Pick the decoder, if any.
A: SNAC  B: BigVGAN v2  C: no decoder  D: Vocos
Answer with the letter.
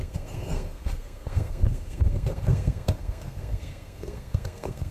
A